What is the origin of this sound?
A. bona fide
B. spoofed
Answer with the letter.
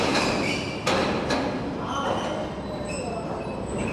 A